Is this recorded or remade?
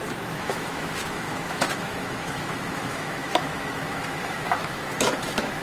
remade